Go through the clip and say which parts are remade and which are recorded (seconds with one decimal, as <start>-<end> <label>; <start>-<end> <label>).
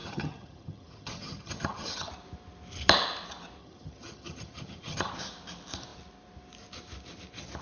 0.0-2.1 remade; 2.1-3.6 recorded; 3.6-5.1 remade; 5.1-7.6 recorded